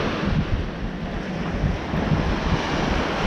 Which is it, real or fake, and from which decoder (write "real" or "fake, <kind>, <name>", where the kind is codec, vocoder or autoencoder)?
real